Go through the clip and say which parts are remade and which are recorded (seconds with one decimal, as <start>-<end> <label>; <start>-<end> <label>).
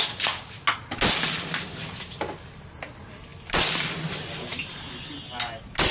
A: 0.0-5.9 recorded